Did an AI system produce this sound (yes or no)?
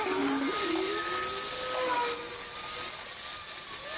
no